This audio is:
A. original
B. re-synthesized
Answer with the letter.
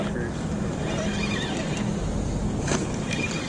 A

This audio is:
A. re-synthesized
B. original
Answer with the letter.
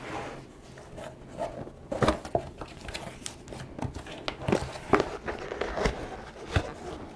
B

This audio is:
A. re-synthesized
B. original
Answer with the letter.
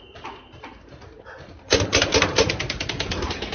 B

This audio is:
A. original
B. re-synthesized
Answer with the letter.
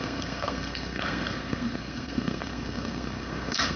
B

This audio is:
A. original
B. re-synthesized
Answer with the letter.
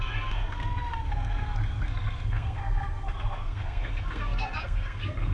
B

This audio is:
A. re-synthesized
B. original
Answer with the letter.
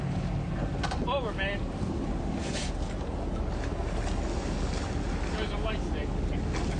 B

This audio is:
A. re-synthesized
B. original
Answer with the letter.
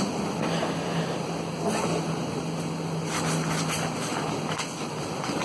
B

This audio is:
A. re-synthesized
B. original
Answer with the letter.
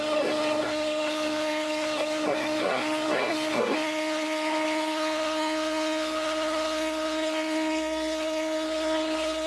A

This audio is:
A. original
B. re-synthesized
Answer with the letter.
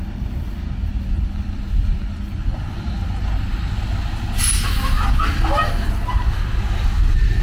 A